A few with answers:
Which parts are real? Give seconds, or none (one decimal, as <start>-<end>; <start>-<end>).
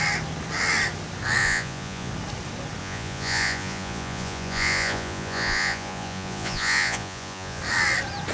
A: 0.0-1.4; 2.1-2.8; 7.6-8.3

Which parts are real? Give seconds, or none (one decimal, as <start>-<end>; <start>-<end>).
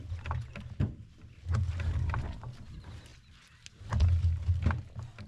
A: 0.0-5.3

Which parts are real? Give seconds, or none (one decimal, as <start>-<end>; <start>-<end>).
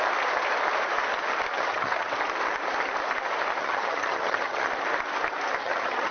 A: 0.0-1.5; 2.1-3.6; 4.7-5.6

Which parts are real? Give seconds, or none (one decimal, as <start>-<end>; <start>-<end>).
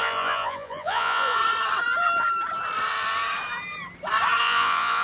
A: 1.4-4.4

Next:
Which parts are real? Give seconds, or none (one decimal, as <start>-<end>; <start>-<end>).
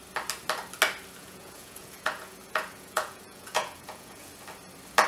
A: 0.0-1.2; 4.3-5.1